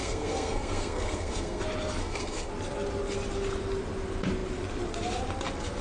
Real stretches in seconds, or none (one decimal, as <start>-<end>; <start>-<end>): 1.6-2.0; 2.5-5.8